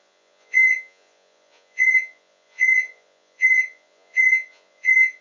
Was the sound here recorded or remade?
remade